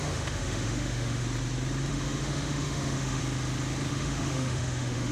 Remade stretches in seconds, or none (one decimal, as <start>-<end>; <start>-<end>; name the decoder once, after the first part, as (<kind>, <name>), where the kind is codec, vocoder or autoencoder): 0.0-1.2 (autoencoder, DAC-VAE); 1.9-3.2; 3.9-5.1